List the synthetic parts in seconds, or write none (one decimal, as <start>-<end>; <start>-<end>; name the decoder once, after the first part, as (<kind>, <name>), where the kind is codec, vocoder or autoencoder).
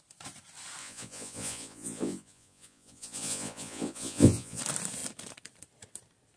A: 0.8-4.6 (vocoder, Vocos)